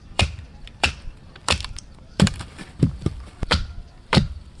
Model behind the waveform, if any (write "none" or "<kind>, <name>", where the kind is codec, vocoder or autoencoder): vocoder, BigVGAN v2